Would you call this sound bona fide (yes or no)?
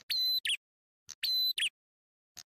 yes